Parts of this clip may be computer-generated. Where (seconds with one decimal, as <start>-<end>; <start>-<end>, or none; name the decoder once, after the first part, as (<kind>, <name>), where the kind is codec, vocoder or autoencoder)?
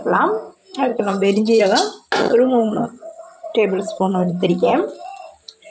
0.9-1.6 (vocoder, HiFi-GAN); 2.2-4.5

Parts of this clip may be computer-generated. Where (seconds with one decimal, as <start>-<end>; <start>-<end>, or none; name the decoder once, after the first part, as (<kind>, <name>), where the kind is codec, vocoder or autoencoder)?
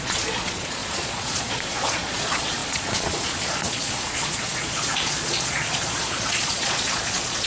0.0-7.5 (vocoder, Vocos)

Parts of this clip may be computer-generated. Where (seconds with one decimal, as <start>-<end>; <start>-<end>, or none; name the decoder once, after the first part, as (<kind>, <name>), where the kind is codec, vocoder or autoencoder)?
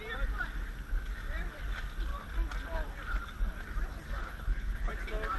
4.2-4.9 (codec, HILCodec)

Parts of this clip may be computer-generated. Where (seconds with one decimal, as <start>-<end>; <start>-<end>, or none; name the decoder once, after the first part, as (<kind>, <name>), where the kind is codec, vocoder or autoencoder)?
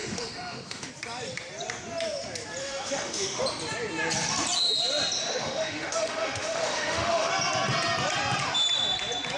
0.0-0.9 (autoencoder, DAC-VAE); 2.6-3.4; 5.2-7.3